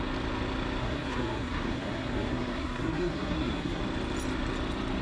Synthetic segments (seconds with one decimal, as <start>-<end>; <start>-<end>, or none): 0.8-3.8